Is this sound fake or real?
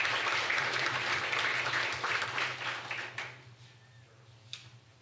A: real